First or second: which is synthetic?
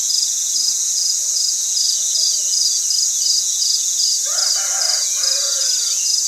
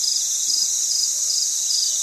first